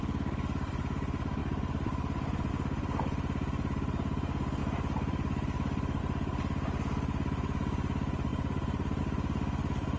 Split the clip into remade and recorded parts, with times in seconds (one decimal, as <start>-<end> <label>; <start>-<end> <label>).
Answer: 0.0-1.4 recorded; 1.4-2.5 remade; 2.5-8.3 recorded; 8.3-9.0 remade; 9.0-10.0 recorded